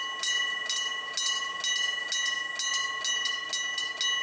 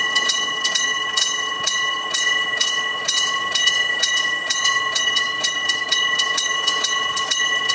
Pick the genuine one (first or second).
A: first